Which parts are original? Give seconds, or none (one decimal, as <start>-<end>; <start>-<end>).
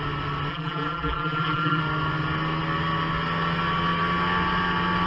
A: 0.0-0.5; 1.8-5.1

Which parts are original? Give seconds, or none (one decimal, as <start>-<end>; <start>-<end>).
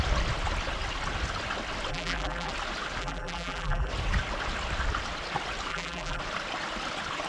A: 0.0-1.9; 2.5-3.0; 3.9-5.7; 6.2-7.3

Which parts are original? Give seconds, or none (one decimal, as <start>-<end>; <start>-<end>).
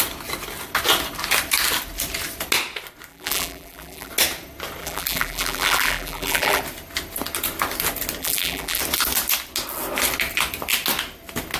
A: 0.0-3.1; 4.1-4.8; 6.6-8.2; 8.8-11.6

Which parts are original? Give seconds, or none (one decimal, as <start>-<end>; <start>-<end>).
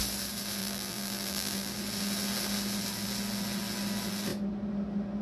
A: 0.0-0.6; 1.7-5.2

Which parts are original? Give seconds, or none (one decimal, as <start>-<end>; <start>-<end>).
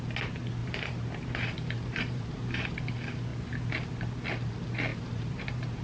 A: 0.0-0.6; 2.8-4.9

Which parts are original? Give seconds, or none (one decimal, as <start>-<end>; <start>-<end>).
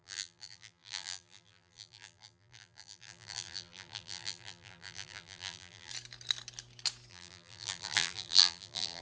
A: 5.9-7.1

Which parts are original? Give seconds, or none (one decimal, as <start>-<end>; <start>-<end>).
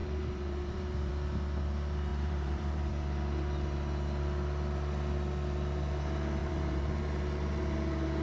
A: 1.1-2.1; 2.9-6.4; 7.0-8.2